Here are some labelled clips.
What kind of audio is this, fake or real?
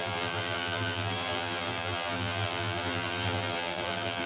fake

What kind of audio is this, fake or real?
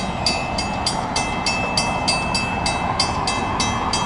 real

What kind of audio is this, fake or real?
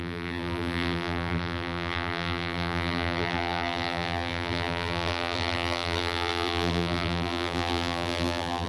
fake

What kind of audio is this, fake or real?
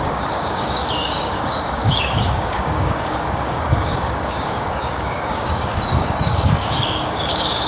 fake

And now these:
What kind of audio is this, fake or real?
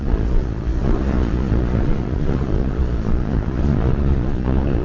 fake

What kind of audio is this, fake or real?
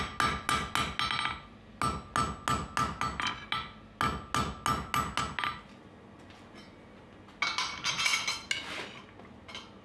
real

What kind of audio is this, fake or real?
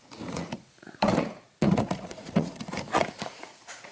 fake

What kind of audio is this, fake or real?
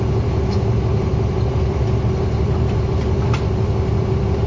real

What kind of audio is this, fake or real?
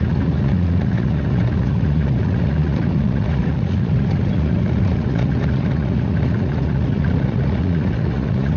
fake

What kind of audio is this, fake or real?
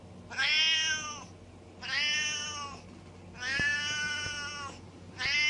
real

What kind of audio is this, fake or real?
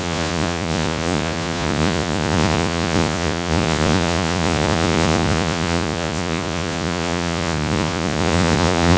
fake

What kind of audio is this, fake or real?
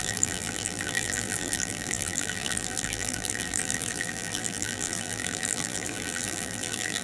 fake